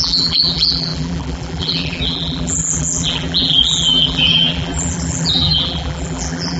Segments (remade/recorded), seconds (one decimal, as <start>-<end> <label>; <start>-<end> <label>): 0.0-6.6 remade